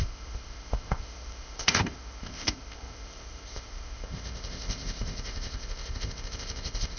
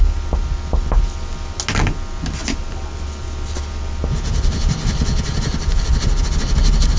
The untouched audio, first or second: second